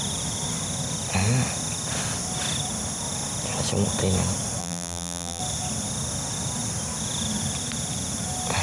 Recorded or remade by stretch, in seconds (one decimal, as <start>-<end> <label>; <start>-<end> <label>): 0.0-4.6 recorded; 4.6-5.4 remade; 5.4-8.6 recorded